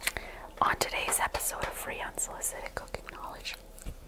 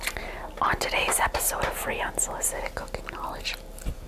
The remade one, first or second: first